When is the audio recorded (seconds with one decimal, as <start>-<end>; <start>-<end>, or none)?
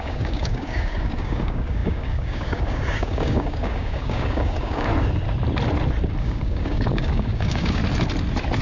4.9-6.2; 7.8-8.6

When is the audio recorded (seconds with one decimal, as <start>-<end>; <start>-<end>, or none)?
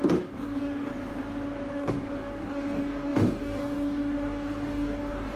0.9-1.7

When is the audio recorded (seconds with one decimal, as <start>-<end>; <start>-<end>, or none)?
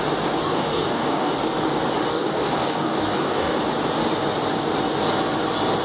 0.0-0.4; 1.3-2.1; 3.6-5.8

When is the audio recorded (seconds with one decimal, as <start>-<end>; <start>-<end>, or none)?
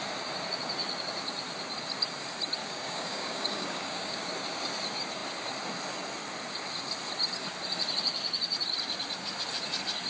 0.0-2.6; 4.3-10.1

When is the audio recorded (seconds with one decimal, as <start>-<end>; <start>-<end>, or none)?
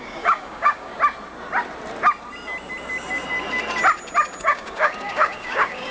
0.9-4.4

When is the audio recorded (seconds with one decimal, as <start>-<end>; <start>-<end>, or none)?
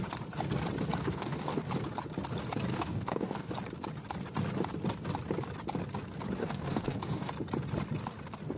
0.0-1.0; 1.6-2.7; 3.5-6.4; 7.3-8.6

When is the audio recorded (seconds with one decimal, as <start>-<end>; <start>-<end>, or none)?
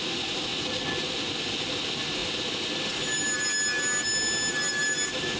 0.0-5.4